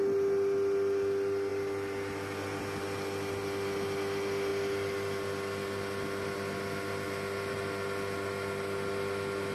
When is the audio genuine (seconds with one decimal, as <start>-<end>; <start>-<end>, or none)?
0.0-9.5